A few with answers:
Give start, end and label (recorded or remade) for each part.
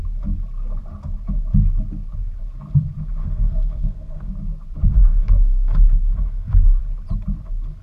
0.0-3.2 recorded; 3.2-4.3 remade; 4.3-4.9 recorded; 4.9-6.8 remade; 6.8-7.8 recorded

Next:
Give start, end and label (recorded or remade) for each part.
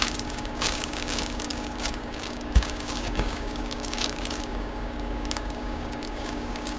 0.0-6.8 remade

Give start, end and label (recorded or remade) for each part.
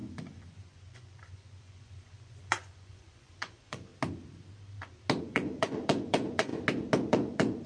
0.0-3.9 remade; 3.9-5.2 recorded; 5.2-6.5 remade; 6.5-7.1 recorded; 7.1-7.7 remade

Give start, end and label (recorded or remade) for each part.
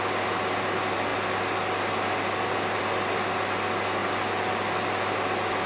0.0-5.7 recorded